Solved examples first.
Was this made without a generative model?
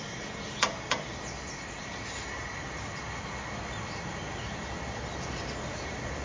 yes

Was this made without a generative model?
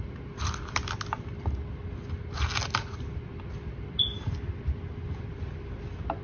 yes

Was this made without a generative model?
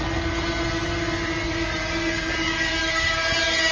yes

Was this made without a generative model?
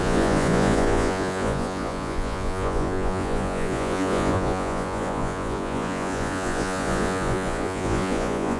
no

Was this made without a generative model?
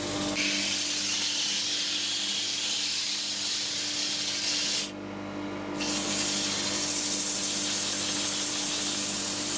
yes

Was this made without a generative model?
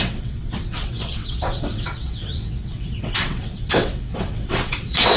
no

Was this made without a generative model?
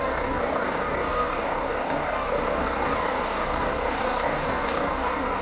no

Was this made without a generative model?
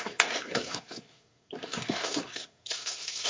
no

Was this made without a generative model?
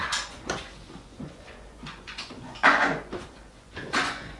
no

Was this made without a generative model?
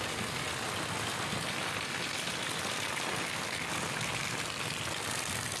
yes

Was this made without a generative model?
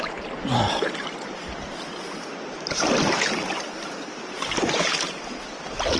yes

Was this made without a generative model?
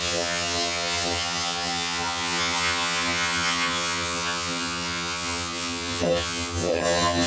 no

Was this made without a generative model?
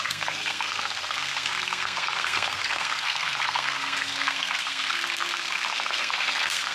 no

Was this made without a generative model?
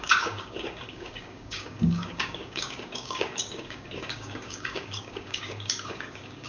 no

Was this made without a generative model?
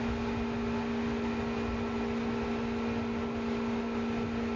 yes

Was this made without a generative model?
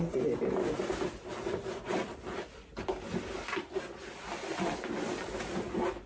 yes